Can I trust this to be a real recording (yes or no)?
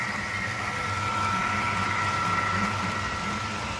yes